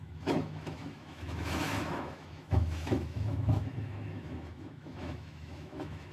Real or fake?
fake